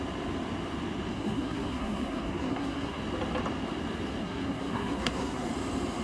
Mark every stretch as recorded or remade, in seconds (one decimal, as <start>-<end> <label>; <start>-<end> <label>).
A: 0.0-1.1 recorded; 1.1-3.0 remade; 3.0-4.2 recorded; 4.2-5.5 remade; 5.5-6.0 recorded